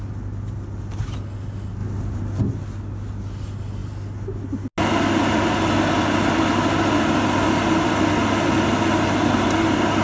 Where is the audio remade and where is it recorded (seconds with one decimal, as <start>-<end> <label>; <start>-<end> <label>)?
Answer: 0.0-10.0 recorded